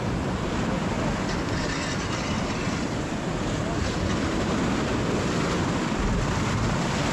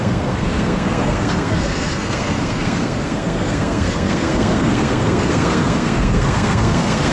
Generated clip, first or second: second